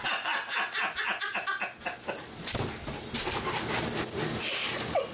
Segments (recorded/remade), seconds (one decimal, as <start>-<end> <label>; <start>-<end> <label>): 0.0-5.1 recorded